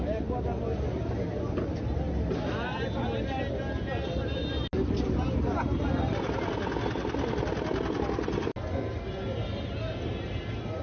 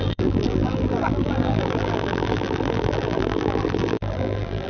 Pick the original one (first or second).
first